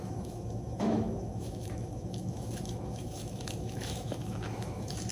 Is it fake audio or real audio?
fake